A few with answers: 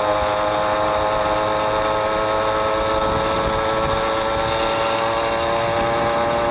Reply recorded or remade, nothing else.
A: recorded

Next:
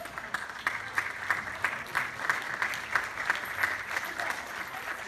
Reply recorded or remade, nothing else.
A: recorded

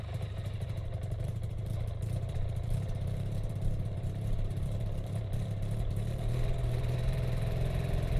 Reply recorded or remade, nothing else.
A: remade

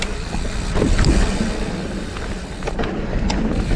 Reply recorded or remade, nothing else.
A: recorded